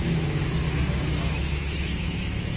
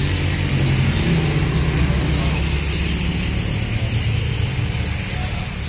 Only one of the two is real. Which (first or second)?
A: second